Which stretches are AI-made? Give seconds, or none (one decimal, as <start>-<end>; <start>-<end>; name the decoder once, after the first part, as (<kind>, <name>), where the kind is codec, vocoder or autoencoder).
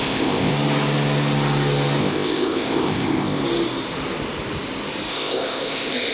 0.0-0.5 (codec, ZipCodec); 2.0-3.4; 5.1-6.1